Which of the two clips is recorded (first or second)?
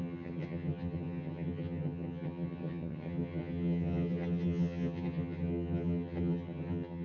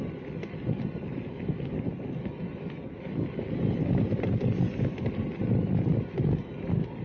second